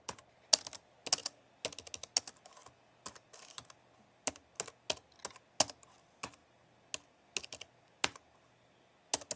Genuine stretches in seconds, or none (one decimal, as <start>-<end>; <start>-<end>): 0.0-9.4